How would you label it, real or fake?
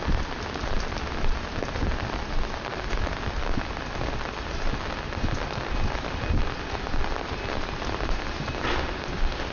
real